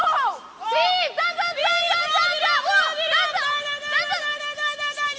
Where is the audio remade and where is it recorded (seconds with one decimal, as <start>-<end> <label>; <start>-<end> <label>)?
0.0-5.2 recorded